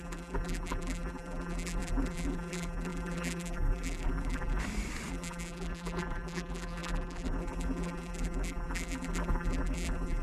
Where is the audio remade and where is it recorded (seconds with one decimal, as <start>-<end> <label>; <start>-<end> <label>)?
0.0-4.6 remade; 4.6-5.1 recorded; 5.1-10.2 remade